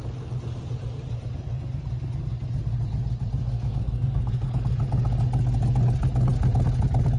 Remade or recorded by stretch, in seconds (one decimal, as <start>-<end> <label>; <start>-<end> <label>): 0.0-3.4 recorded; 3.4-4.6 remade; 4.6-7.2 recorded